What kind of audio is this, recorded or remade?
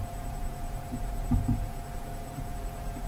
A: remade